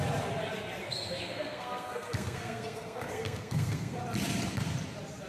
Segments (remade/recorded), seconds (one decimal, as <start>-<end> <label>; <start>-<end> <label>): 0.0-0.8 recorded; 0.8-4.0 remade; 4.0-5.3 recorded